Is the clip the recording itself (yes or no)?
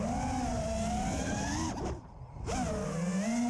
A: yes